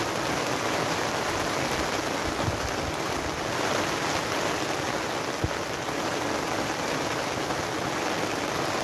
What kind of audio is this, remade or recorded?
recorded